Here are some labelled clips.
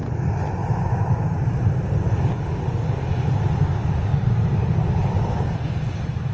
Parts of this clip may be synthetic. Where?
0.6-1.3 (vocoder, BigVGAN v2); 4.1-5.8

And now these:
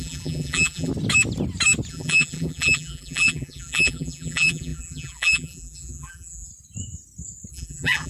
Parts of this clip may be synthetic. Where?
0.0-0.9 (vocoder, BigVGAN v2); 1.9-6.5; 7.5-8.1

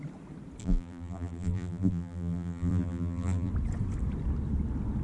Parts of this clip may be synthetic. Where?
0.6-3.5 (vocoder, BigVGAN v2)

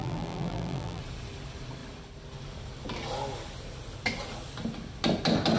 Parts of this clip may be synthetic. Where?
0.0-1.0 (vocoder, BigVGAN v2)